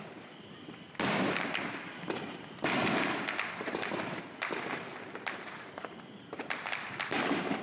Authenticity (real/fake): real